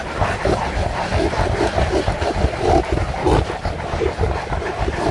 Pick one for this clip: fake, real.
real